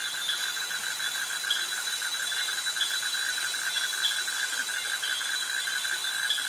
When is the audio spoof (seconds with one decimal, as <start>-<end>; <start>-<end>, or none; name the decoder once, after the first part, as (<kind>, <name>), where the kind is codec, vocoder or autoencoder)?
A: none